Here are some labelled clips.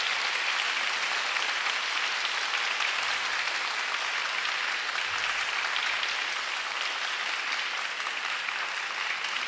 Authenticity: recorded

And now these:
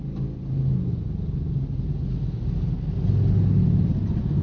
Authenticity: recorded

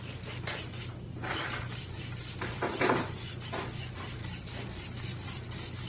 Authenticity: recorded